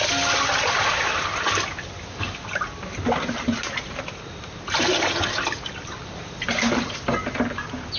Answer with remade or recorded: recorded